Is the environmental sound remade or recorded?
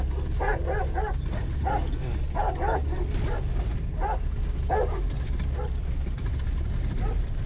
recorded